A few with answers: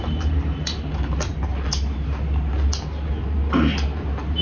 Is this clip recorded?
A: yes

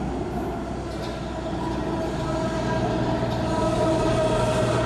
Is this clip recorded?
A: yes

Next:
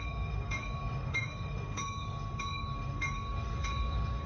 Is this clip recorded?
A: no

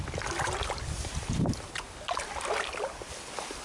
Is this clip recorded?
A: yes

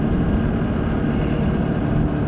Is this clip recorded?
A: yes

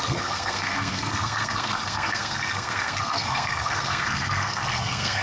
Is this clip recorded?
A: no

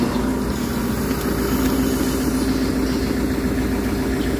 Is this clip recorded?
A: yes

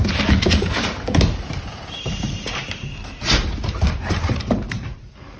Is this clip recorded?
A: no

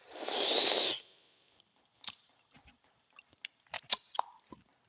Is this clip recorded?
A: yes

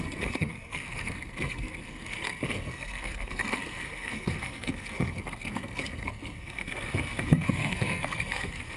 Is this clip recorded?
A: no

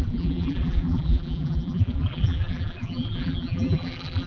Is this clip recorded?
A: no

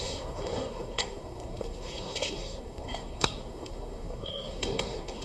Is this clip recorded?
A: no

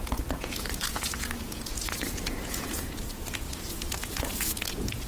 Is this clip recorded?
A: no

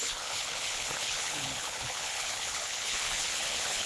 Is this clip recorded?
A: no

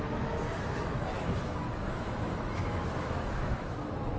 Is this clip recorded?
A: no